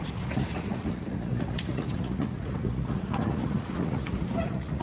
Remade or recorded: remade